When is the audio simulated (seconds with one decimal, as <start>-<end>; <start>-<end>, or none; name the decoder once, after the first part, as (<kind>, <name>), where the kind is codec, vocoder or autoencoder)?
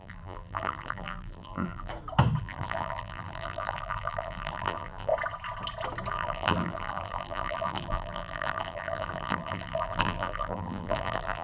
0.0-1.9 (vocoder, BigVGAN v2); 2.4-5.1; 6.1-11.4